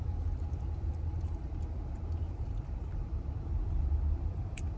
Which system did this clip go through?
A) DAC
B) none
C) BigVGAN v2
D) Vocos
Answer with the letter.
C